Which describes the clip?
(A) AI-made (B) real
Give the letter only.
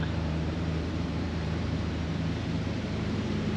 A